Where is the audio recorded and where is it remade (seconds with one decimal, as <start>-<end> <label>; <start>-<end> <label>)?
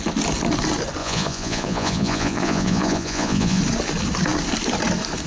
0.0-1.0 recorded; 1.0-3.6 remade; 3.6-5.3 recorded